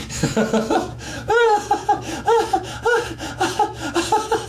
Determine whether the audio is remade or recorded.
remade